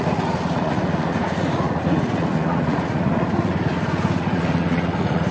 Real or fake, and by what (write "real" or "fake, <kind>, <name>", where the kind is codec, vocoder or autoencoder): fake, vocoder, Vocos